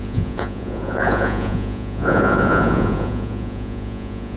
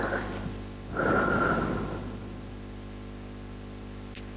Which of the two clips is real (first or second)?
second